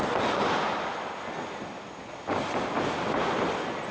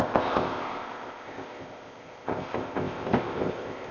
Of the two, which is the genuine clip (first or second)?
first